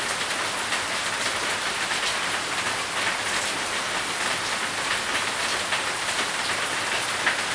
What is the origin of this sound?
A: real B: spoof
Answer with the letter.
A